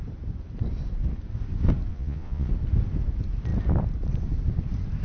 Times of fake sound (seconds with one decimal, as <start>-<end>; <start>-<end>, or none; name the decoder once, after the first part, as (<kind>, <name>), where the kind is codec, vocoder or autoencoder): 1.9-2.5 (vocoder, Vocos)